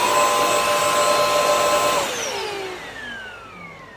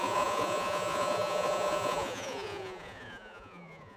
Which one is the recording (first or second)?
first